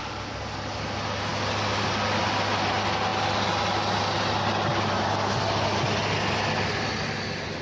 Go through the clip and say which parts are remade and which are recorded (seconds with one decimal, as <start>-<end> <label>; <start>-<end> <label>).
0.0-7.6 recorded